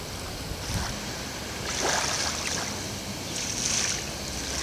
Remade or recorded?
recorded